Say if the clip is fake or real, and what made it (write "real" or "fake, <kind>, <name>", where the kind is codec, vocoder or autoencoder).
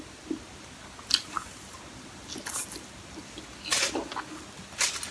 real